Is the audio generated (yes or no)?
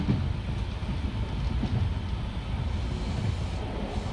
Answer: no